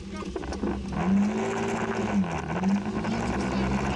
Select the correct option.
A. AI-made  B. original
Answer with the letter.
B